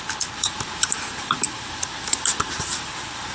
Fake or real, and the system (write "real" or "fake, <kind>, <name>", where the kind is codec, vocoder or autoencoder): fake, vocoder, BigVGAN v2